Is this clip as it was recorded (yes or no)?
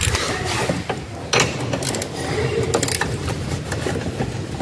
yes